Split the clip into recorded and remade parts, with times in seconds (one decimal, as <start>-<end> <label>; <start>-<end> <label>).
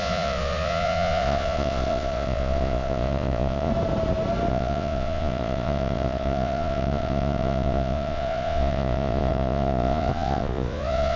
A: 0.0-3.7 remade; 3.7-4.5 recorded; 4.5-11.2 remade